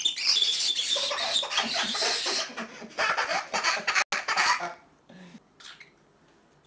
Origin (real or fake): real